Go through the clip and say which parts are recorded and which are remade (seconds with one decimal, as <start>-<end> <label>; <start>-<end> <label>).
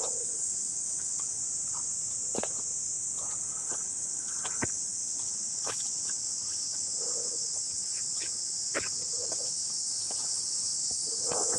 0.0-1.4 remade; 1.4-3.4 recorded; 3.4-11.6 remade